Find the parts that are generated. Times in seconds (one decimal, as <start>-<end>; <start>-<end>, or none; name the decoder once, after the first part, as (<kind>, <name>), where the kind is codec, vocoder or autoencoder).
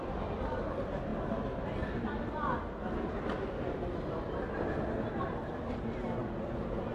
none